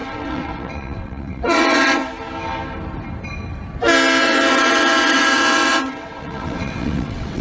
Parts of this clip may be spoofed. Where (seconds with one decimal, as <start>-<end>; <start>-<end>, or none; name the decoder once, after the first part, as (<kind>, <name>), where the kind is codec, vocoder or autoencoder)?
0.0-2.0 (vocoder, WaveNeXt); 4.2-7.4